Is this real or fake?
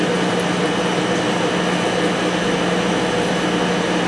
real